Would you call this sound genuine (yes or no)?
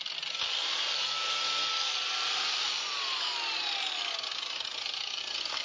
yes